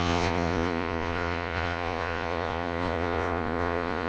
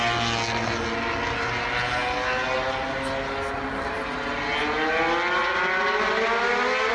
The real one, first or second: second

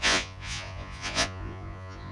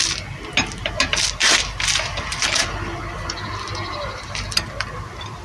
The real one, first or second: second